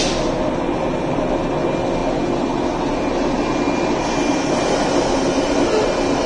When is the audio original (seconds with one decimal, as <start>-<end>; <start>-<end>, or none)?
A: 0.0-6.3